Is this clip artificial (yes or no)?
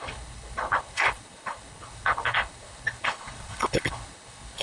yes